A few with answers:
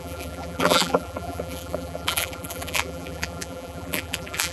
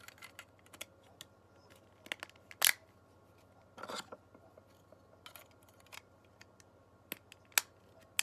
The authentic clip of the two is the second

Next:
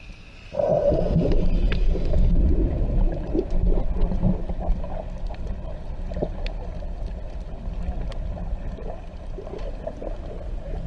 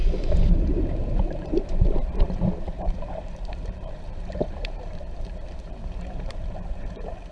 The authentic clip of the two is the first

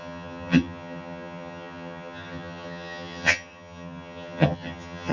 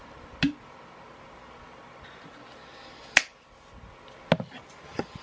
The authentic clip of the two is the second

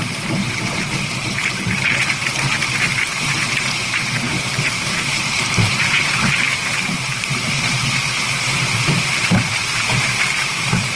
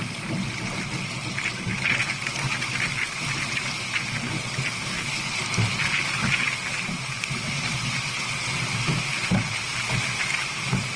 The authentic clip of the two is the second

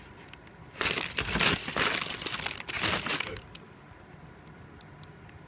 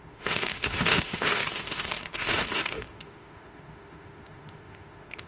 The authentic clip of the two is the first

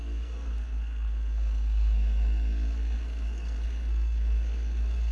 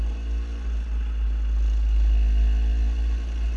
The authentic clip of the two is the second